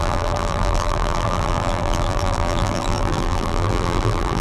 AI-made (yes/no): yes